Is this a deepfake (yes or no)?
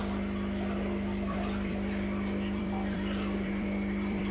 yes